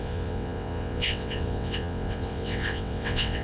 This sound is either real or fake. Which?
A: fake